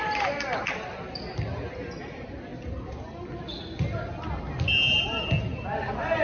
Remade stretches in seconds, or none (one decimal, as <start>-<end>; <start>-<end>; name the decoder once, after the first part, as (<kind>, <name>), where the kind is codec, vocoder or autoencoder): none